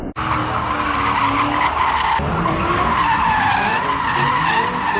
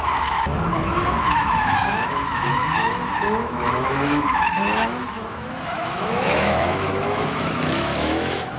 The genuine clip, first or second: first